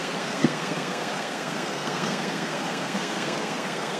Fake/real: fake